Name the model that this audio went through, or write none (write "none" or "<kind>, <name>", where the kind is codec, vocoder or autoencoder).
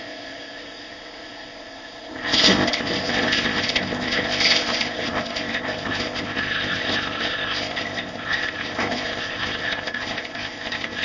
codec, ZipCodec